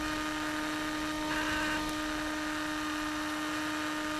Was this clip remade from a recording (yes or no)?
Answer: no